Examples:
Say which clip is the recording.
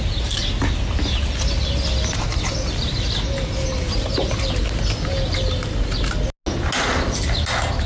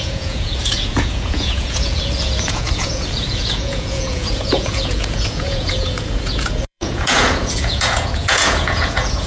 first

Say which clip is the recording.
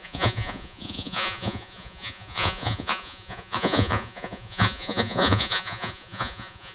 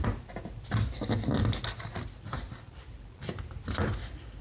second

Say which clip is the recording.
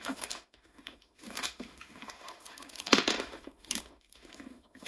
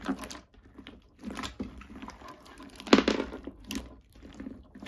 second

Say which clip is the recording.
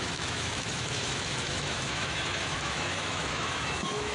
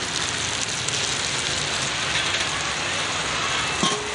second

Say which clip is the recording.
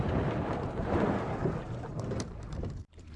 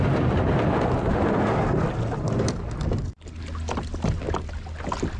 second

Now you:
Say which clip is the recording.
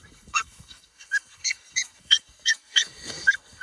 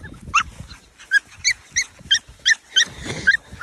second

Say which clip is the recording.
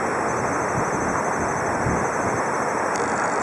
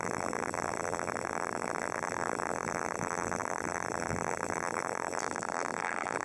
first